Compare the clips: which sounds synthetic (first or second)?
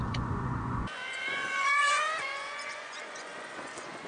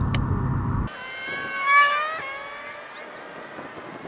first